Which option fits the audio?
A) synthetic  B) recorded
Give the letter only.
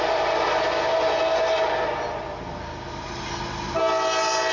B